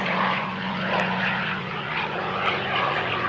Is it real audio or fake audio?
fake